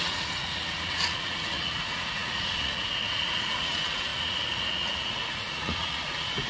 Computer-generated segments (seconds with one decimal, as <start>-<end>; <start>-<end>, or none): 0.0-6.5